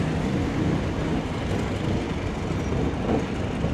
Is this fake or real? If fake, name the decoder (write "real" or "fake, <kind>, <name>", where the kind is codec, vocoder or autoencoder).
real